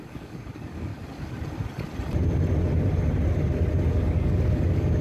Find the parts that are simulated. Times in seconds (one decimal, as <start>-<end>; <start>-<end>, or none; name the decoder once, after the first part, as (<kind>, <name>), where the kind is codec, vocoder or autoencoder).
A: 0.0-0.9 (codec, DAC); 3.9-5.0